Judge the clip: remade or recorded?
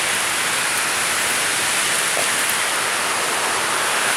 recorded